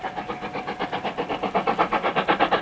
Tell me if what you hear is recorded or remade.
remade